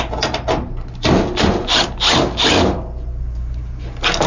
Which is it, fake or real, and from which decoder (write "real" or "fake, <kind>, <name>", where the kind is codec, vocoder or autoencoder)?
real